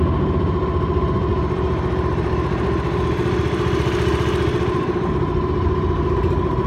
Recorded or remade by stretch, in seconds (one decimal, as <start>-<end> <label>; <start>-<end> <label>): 0.0-6.7 recorded